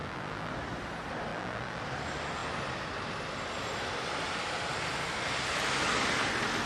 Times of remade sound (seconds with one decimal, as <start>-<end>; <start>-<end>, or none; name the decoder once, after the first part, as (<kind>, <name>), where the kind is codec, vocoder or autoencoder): 0.0-0.5 (vocoder, BigVGAN v2); 1.3-1.8